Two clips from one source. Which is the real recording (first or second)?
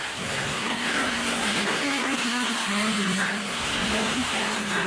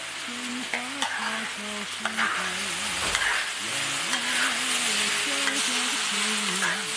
second